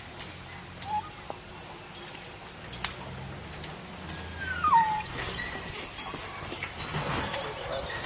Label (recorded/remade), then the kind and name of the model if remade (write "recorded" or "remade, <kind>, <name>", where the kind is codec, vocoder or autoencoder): recorded